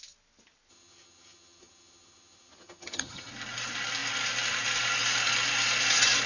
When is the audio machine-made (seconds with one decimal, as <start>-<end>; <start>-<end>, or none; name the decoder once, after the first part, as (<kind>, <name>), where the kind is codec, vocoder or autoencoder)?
0.7-3.3 (vocoder, HiFi-GAN)